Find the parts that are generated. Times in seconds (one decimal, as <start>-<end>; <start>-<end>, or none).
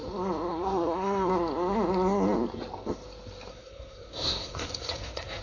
0.5-1.3; 3.5-5.4